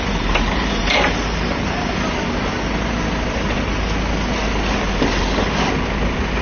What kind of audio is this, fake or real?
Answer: real